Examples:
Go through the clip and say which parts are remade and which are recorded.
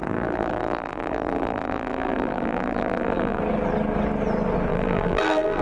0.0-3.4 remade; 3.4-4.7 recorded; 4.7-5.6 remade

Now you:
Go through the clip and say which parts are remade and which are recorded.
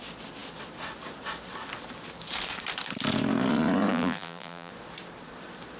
0.0-3.9 recorded; 3.9-4.7 remade; 4.7-5.8 recorded